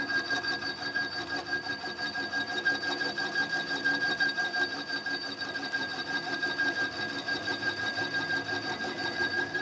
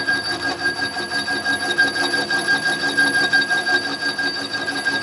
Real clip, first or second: second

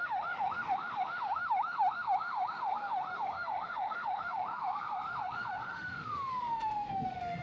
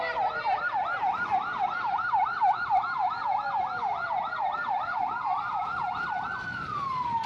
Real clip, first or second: second